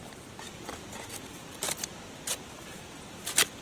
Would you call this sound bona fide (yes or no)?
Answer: yes